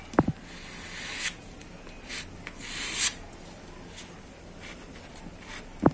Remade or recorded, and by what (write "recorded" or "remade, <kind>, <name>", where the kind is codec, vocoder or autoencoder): recorded